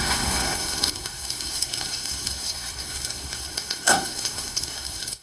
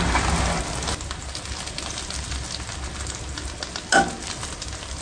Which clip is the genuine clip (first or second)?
second